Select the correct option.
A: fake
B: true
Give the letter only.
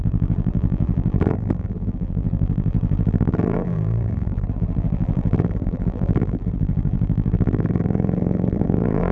A